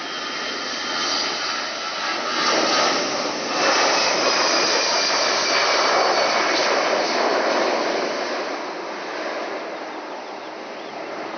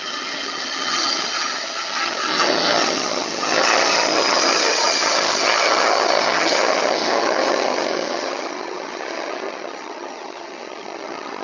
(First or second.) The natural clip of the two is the first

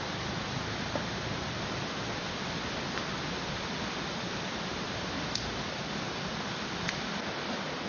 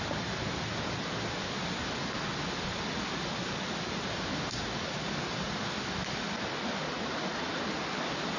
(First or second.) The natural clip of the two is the second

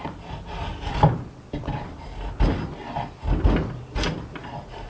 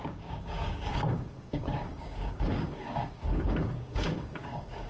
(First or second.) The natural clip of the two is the first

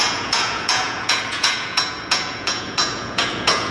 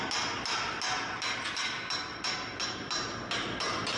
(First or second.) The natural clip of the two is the second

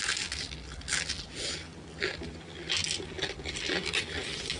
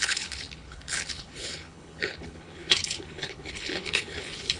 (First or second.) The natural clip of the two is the first